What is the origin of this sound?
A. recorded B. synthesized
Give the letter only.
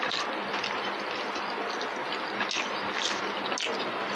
A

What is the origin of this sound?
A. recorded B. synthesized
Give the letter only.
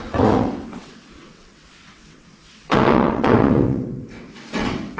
B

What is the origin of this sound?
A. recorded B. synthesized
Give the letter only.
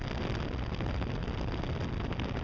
A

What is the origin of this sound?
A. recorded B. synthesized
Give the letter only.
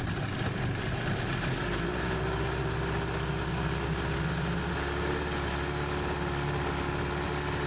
A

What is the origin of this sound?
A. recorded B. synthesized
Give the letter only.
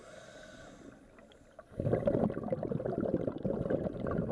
A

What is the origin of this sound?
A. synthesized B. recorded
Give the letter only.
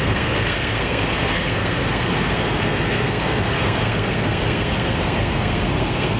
A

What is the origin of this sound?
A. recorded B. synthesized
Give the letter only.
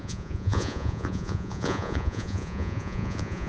B